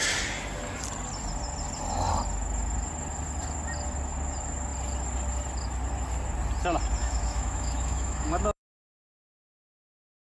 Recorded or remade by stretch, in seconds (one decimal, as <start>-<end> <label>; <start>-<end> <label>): 0.0-7.0 recorded; 7.0-9.2 remade; 9.2-10.3 recorded